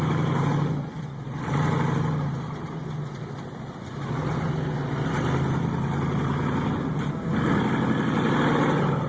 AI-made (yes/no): no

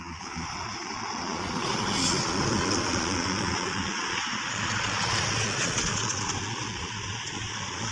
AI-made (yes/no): yes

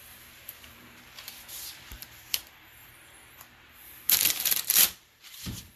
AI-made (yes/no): yes